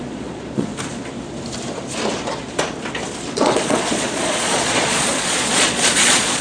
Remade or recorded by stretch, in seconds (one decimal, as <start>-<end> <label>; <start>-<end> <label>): 0.0-0.7 remade; 0.7-3.3 recorded; 3.3-6.4 remade